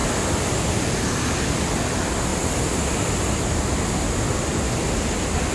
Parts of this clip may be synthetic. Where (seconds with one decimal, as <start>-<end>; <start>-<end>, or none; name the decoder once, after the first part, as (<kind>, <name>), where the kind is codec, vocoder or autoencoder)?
none